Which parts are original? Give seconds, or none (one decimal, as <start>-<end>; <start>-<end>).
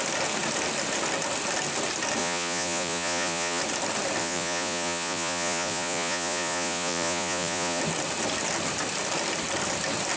0.0-2.2; 3.6-4.2; 7.8-10.2